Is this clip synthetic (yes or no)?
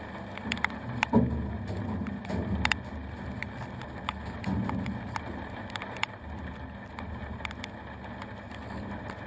no